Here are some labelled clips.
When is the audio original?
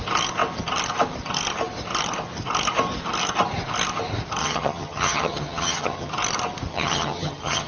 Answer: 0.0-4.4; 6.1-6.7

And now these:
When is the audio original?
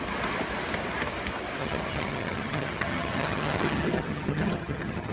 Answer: 0.0-1.6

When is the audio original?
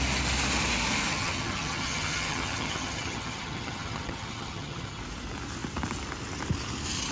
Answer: 0.0-1.1; 5.0-7.1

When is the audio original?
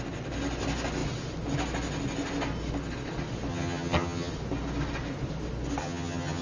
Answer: 0.0-3.5; 4.3-5.8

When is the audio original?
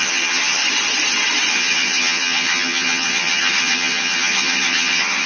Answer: 0.6-1.5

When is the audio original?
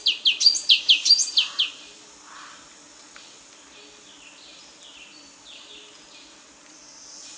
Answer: 0.0-7.4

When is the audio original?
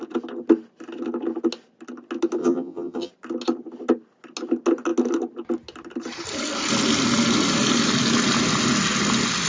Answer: 0.0-2.4; 3.1-9.5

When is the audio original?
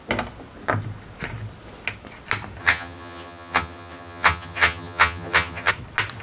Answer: 0.0-2.6; 5.7-6.2